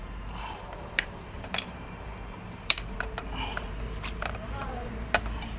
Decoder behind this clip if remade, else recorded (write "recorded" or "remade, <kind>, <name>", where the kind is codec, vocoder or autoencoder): remade, vocoder, BigVGAN v2